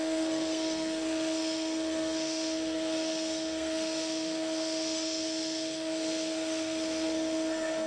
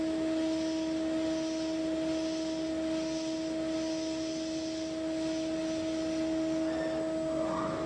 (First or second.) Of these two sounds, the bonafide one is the second